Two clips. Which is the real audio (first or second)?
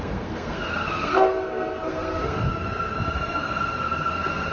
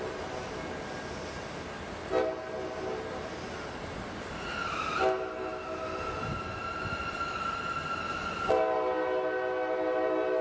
second